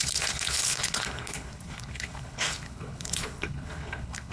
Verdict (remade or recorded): remade